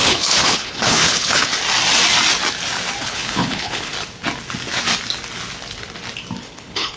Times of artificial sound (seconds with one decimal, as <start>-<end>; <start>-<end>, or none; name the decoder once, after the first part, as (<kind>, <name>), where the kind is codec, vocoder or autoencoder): 0.0-1.5 (codec, HILCodec); 3.0-3.9; 6.4-7.0